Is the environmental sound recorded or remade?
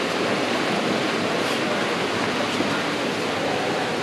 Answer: recorded